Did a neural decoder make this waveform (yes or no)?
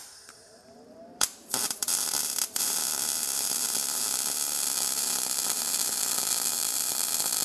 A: yes